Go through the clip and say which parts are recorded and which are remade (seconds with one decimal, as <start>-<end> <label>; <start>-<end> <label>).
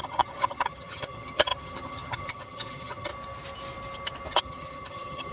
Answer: 0.0-3.1 remade; 3.1-4.4 recorded; 4.4-5.3 remade